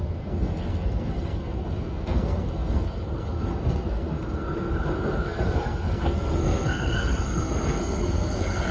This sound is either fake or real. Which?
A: fake